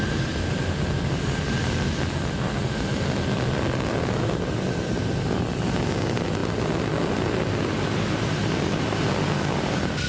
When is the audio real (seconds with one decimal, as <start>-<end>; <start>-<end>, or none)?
0.0-10.1

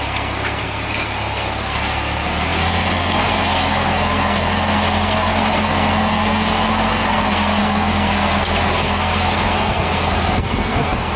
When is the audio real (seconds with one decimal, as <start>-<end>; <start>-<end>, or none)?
none

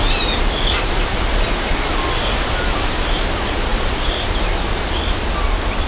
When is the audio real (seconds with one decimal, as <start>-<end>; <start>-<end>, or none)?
0.0-5.9

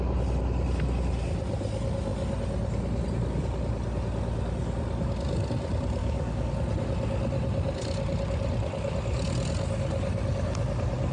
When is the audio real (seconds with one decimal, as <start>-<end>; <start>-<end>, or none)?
0.0-6.0; 6.5-11.1

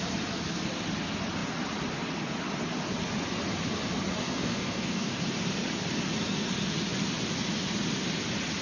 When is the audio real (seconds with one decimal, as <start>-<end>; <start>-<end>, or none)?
0.0-4.2; 5.1-8.6

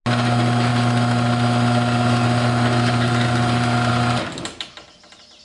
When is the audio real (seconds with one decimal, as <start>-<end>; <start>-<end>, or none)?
0.0-5.4